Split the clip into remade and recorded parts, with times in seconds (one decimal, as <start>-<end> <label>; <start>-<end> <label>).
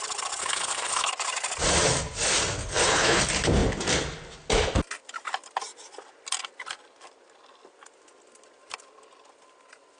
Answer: 0.0-0.4 recorded; 0.4-1.1 remade; 1.1-2.6 recorded; 2.6-3.2 remade; 3.2-10.0 recorded